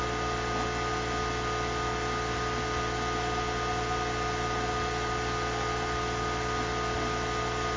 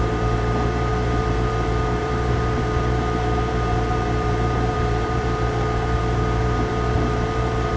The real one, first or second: first